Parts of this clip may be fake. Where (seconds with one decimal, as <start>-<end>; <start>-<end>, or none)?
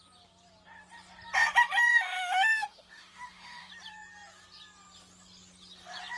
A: 1.9-3.7